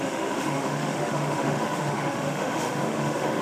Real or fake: fake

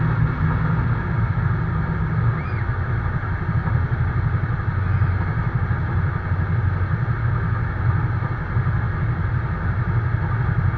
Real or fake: real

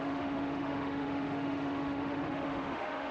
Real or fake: fake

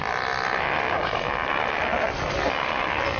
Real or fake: real